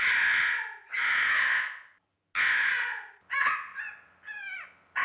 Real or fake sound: real